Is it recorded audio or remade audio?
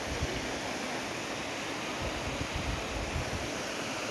recorded